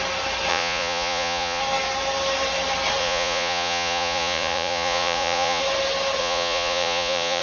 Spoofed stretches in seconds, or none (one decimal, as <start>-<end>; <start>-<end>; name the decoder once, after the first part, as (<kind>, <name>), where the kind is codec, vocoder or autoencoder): 0.5-1.6 (vocoder, Vocos); 3.0-5.6; 6.2-7.4